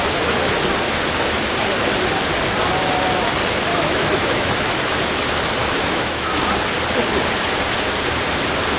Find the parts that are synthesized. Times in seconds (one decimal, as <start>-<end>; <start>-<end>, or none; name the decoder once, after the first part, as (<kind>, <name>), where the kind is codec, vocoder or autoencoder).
3.7-4.5 (autoencoder, DAC-VAE); 5.6-6.3